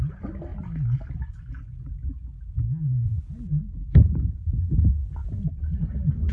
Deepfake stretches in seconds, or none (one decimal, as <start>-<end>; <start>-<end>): none